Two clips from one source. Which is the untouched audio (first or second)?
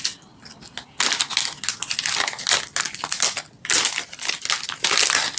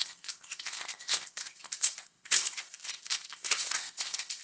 first